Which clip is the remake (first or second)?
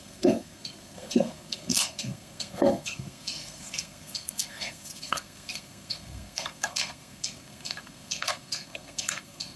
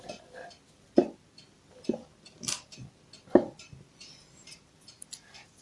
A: first